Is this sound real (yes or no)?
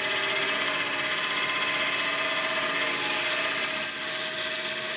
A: yes